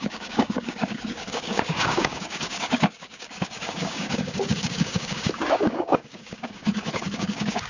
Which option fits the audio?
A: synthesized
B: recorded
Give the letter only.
A